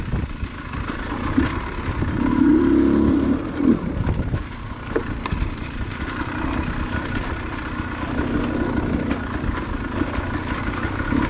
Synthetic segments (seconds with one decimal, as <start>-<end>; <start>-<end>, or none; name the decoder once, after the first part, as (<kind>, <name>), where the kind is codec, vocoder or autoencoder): 2.5-6.6 (vocoder, BigVGAN v2)